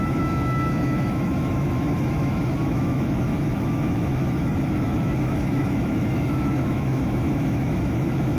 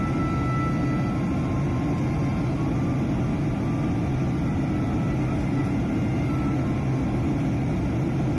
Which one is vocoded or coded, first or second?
first